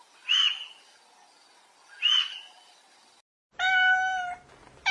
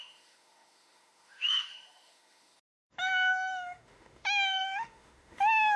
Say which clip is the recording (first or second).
first